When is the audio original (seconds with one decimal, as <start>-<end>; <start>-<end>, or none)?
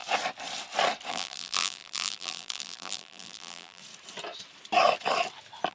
0.0-1.1; 3.8-5.7